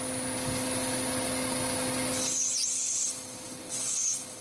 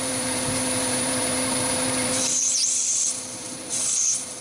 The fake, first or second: second